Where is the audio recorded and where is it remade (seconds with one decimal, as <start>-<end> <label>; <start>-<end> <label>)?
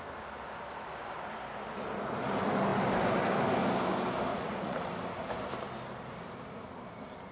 0.0-4.3 recorded; 4.3-4.9 remade; 4.9-7.3 recorded